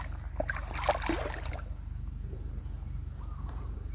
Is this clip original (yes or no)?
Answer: yes